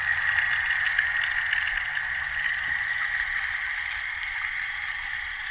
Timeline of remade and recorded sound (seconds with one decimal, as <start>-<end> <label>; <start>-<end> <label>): 0.0-5.5 recorded